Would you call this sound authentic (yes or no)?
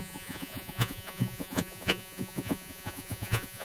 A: no